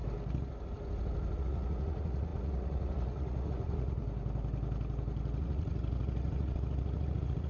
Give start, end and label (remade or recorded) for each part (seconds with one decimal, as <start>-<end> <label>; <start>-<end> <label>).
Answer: 0.0-1.4 recorded; 1.4-4.0 remade; 4.0-5.4 recorded; 5.4-7.5 remade